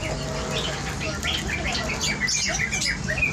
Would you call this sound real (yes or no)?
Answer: yes